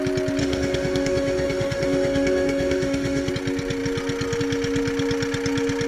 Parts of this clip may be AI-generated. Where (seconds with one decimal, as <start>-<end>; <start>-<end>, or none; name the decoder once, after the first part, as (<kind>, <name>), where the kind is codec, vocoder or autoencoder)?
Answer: 0.4-3.3 (autoencoder, DAC-VAE)